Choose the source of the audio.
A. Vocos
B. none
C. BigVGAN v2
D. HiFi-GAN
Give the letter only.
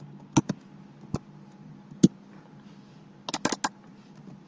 B